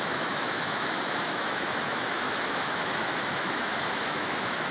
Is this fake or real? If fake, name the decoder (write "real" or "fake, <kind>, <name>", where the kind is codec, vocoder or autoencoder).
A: fake, autoencoder, DAC-VAE